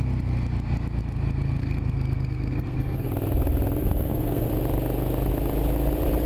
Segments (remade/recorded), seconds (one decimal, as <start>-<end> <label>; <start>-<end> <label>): 0.0-1.6 recorded; 1.6-3.1 remade; 3.1-3.8 recorded; 3.8-4.5 remade; 4.5-6.3 recorded